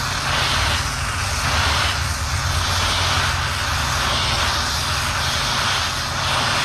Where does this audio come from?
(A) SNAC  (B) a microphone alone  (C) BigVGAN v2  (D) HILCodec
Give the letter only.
B